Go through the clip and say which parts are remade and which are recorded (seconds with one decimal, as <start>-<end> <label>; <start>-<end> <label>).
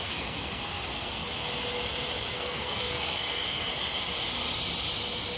0.0-1.2 remade; 1.2-2.3 recorded; 2.3-3.7 remade; 3.7-5.4 recorded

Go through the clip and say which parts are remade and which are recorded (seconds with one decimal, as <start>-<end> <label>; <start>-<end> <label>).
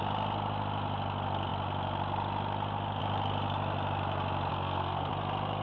0.0-4.5 recorded; 4.5-5.1 remade; 5.1-5.6 recorded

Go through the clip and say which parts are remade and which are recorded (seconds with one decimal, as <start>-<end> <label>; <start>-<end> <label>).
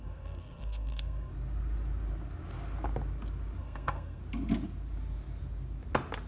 0.0-1.3 remade; 1.3-3.6 recorded; 3.6-4.2 remade; 4.2-6.3 recorded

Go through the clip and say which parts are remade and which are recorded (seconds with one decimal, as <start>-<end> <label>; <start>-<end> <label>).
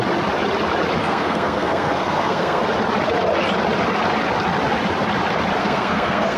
0.0-1.0 recorded; 1.0-2.6 remade; 2.6-5.6 recorded; 5.6-6.4 remade